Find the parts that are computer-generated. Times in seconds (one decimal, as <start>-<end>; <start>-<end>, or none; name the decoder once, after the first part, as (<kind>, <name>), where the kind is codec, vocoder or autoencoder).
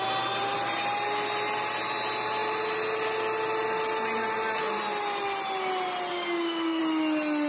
6.1-6.8 (codec, DAC)